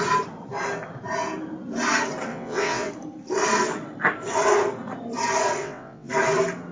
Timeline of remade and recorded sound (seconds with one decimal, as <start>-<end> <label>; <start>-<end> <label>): 0.0-2.3 recorded; 2.3-2.9 remade; 2.9-5.6 recorded; 5.6-6.1 remade; 6.1-6.7 recorded

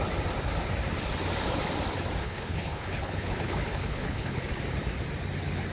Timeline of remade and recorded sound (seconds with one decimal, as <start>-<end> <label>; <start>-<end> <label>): 0.0-2.2 recorded; 2.2-4.4 remade; 4.4-5.7 recorded